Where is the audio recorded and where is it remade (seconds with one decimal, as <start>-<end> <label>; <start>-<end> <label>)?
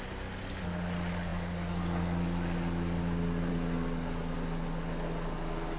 0.0-5.8 recorded